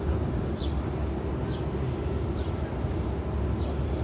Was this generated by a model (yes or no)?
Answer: no